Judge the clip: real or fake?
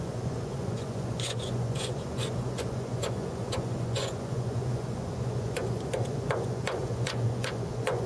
fake